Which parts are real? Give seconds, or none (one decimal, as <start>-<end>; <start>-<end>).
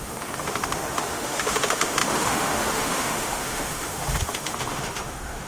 none